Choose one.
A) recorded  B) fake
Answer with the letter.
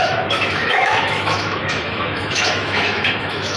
B